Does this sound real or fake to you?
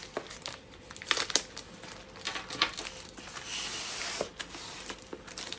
real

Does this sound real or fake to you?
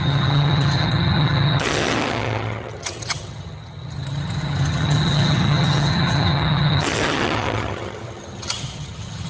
fake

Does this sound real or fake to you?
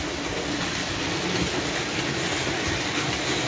real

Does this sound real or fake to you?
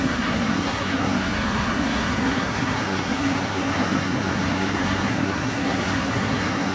fake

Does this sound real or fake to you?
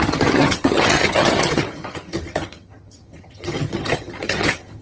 fake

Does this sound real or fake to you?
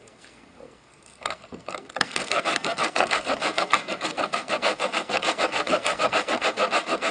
fake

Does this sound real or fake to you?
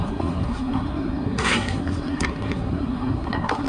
fake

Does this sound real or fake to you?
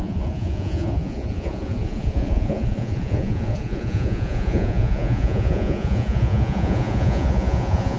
fake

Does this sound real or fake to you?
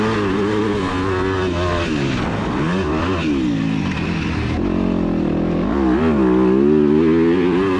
real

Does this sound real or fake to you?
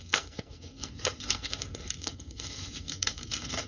fake